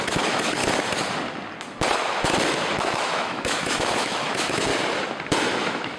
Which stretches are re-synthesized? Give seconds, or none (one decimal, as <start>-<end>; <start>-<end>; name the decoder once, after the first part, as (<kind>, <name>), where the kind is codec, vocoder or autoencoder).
0.0-0.6 (autoencoder, DAC-VAE); 2.7-4.7; 5.6-6.0